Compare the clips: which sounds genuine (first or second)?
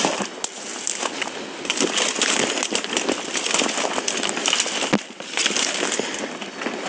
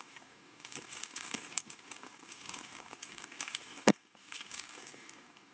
first